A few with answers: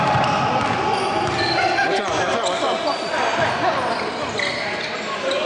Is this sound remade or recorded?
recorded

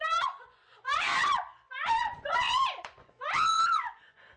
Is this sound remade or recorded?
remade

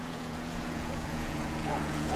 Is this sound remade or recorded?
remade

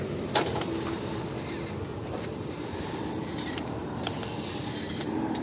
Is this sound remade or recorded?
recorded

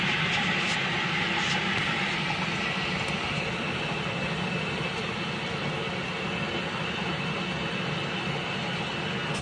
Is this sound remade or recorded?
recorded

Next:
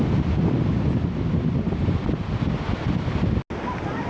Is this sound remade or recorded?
recorded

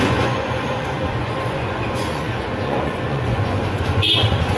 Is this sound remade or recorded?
remade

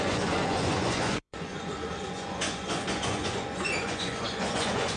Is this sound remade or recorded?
remade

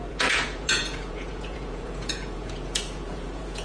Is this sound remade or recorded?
remade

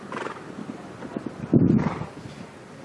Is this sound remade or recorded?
recorded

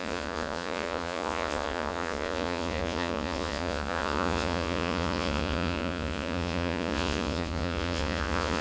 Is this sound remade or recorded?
remade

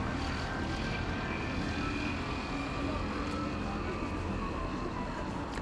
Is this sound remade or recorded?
recorded